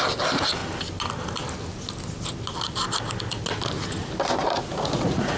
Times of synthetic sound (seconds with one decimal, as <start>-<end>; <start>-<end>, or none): 4.4-5.4